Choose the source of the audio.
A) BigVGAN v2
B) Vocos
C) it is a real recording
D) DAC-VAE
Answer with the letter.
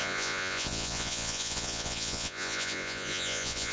B